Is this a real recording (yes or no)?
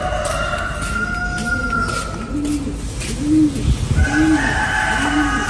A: yes